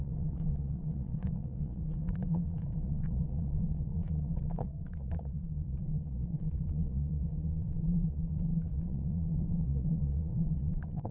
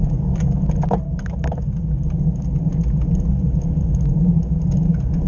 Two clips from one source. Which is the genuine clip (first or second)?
second